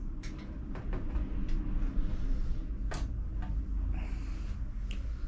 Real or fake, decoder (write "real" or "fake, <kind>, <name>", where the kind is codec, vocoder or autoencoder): real